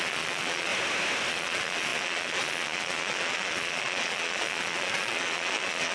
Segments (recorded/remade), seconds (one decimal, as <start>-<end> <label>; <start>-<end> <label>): 0.0-0.7 remade; 0.7-1.3 recorded; 1.3-5.9 remade